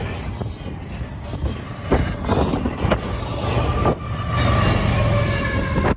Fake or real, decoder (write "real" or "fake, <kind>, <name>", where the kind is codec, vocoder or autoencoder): real